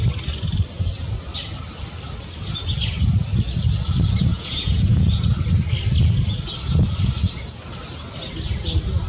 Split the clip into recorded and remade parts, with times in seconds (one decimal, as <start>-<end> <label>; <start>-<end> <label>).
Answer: 0.0-4.3 recorded; 4.3-5.0 remade; 5.0-9.1 recorded

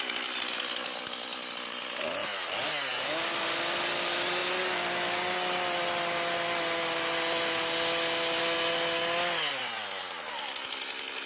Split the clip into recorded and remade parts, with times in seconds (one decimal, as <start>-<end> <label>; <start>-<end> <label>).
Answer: 0.0-11.3 recorded

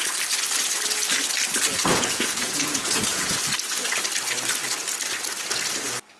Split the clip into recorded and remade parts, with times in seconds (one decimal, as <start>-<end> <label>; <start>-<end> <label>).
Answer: 0.0-1.9 recorded; 1.9-3.3 remade; 3.3-6.2 recorded

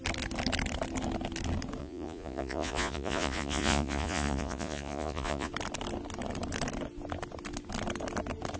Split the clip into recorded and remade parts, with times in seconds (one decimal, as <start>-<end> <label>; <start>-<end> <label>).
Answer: 0.0-1.8 recorded; 1.8-5.5 remade; 5.5-8.6 recorded

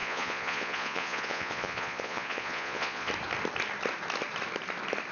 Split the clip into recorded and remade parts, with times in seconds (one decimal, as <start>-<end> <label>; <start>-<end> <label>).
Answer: 0.0-3.1 remade; 3.1-5.1 recorded

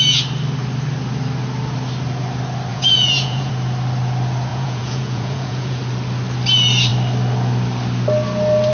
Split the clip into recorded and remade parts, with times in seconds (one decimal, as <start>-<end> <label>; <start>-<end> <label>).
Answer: 0.0-2.7 recorded; 2.7-3.5 remade; 3.5-4.5 recorded; 4.5-5.8 remade; 5.8-8.7 recorded